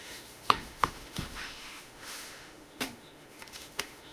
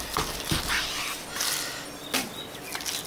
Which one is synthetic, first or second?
first